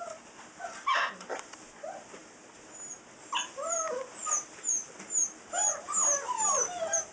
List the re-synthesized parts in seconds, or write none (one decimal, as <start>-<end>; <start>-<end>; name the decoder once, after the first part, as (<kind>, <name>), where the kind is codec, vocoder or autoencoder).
none